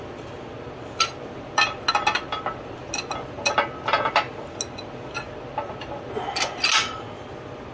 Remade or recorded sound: recorded